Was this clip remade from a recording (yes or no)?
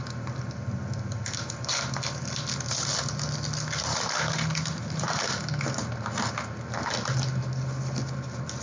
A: no